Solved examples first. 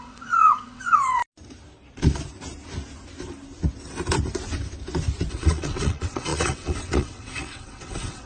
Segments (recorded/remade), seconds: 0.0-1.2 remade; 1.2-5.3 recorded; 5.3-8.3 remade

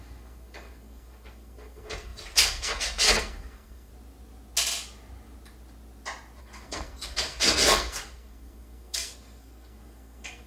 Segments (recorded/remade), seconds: 0.0-3.9 remade; 3.9-6.4 recorded; 6.4-10.5 remade

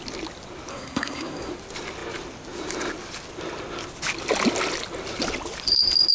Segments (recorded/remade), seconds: 0.0-0.7 recorded; 0.7-1.5 remade; 1.5-6.1 recorded

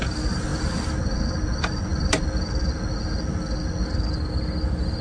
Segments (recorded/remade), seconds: 0.0-5.0 recorded

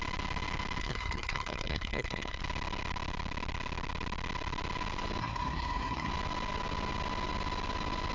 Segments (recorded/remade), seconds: 0.0-0.8 recorded; 0.8-2.4 remade; 2.4-5.2 recorded; 5.2-6.1 remade; 6.1-8.1 recorded